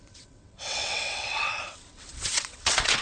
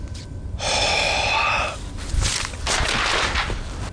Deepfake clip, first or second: first